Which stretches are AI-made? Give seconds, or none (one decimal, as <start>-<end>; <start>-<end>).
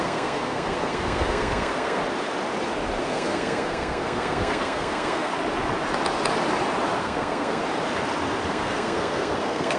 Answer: 0.0-2.0; 3.0-5.3; 7.0-7.6; 8.5-9.8